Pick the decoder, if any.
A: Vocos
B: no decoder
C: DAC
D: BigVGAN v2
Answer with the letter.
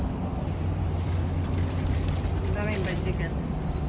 D